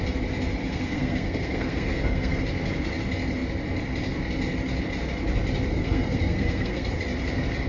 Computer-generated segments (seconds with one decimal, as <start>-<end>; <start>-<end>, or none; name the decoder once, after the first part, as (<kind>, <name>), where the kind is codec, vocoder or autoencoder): 0.6-2.4 (codec, SNAC); 5.7-6.9